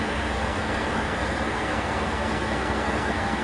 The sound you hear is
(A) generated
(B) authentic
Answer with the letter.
A